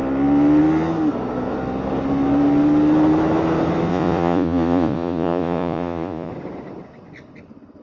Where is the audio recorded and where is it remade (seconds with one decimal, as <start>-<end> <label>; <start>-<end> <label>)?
0.0-3.9 recorded; 3.9-6.3 remade; 6.3-7.8 recorded